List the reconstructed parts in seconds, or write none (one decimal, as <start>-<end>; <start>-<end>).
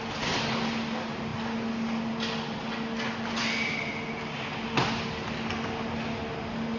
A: none